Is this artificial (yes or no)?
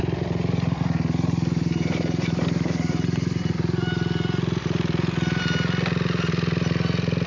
no